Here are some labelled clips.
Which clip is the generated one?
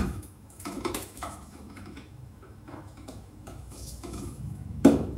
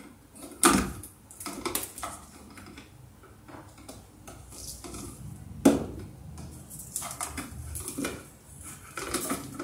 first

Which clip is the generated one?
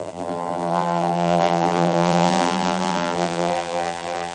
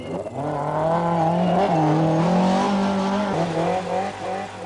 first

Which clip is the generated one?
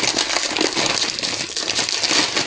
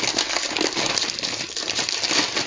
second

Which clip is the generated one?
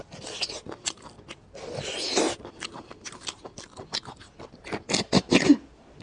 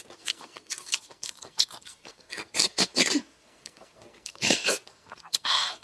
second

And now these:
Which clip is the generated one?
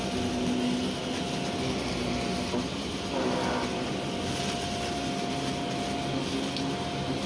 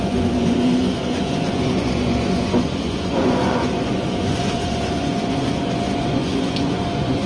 second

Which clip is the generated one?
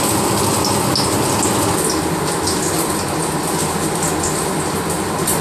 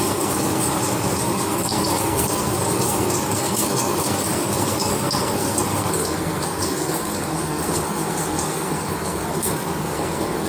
second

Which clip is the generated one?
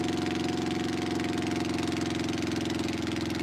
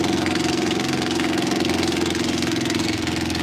second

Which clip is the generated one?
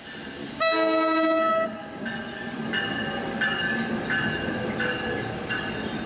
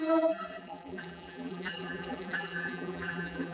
second